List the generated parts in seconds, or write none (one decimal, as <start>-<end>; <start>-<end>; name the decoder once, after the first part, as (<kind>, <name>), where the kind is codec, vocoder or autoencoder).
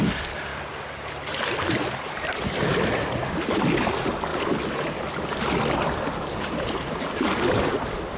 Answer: none